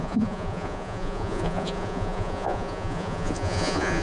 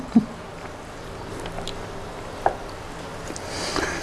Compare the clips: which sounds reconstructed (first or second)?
first